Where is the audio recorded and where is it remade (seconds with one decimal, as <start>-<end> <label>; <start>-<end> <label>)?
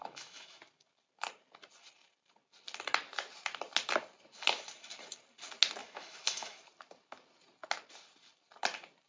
0.0-0.6 remade; 0.6-5.8 recorded; 5.8-6.6 remade; 6.6-9.1 recorded